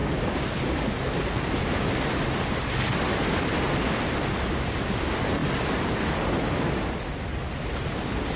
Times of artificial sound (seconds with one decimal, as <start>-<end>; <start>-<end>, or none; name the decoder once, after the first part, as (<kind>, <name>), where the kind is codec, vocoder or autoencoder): none